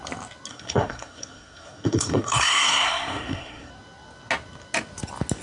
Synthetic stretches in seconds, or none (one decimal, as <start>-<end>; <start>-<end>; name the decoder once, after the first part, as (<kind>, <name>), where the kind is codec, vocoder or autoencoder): 0.5-3.7 (codec, SNAC)